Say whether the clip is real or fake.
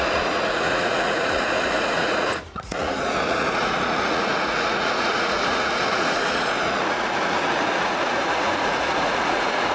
fake